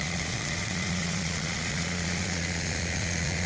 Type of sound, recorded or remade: remade